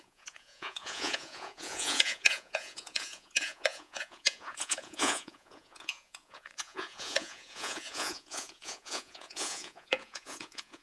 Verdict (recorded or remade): remade